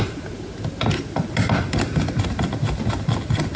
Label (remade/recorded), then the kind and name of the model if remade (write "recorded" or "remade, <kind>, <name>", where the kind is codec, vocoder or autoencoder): recorded